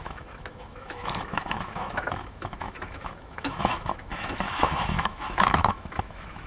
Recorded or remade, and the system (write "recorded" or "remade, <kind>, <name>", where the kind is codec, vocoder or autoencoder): remade, autoencoder, DAC-VAE